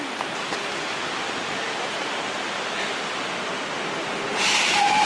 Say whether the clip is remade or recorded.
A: recorded